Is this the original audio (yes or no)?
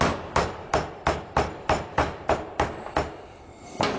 yes